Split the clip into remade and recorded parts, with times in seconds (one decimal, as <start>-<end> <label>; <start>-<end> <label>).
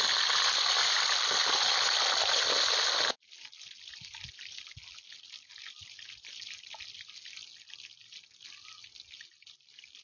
0.0-10.0 recorded